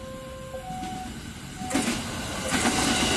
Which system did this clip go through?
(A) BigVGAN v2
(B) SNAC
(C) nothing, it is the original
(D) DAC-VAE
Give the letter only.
C